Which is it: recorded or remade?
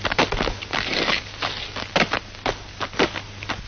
recorded